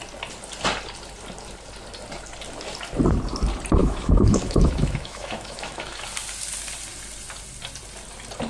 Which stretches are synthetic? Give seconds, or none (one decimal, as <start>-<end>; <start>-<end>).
3.8-6.0